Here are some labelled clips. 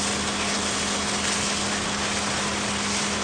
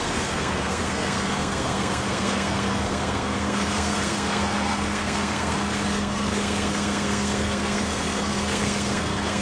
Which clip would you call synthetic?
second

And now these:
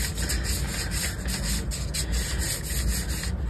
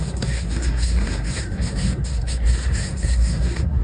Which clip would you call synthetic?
second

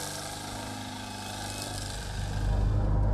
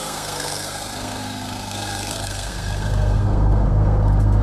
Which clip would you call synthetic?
second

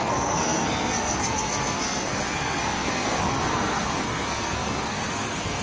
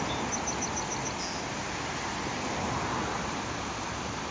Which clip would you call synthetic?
first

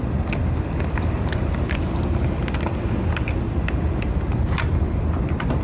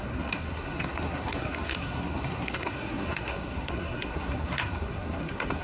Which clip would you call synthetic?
second